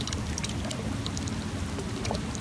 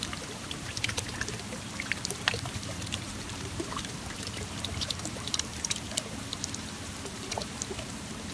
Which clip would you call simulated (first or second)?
second